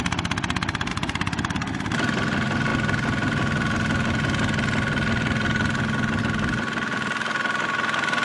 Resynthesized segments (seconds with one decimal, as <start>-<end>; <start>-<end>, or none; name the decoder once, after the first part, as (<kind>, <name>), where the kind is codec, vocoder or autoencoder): 0.9-1.7 (vocoder, Vocos)